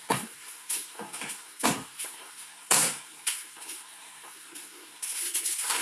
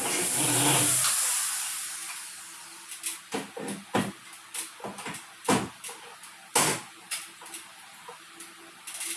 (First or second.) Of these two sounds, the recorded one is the second